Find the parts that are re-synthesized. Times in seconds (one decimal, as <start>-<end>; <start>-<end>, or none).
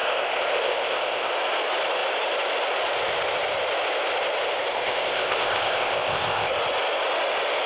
0.0-1.3; 4.7-6.5